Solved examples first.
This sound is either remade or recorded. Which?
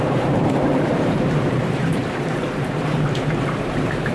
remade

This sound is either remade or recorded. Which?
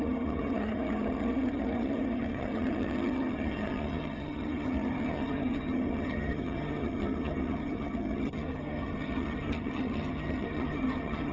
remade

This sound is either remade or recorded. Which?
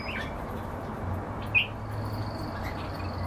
recorded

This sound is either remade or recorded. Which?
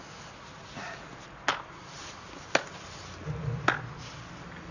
recorded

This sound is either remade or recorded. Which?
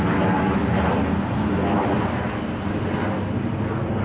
recorded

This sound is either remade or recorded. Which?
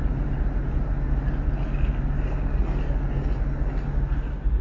recorded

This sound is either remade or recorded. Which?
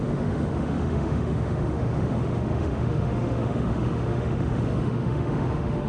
remade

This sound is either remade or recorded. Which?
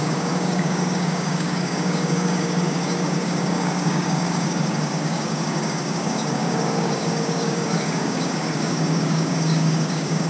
remade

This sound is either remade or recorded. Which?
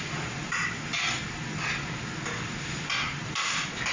recorded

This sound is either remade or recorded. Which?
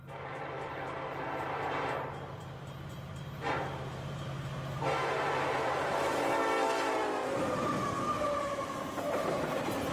remade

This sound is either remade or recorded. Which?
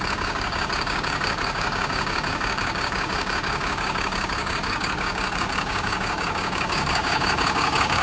remade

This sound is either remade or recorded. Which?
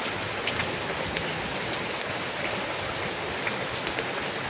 recorded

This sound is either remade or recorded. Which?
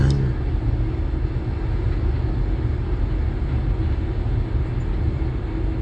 recorded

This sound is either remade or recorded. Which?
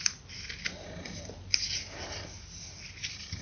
recorded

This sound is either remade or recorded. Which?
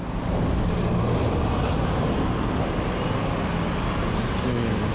recorded